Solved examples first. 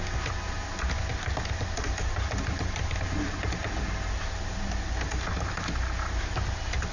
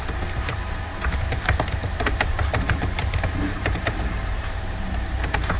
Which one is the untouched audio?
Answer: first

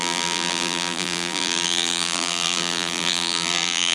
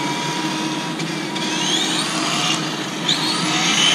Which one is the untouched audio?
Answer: second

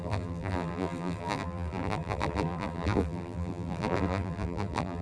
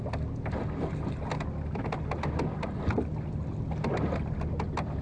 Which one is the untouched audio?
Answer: second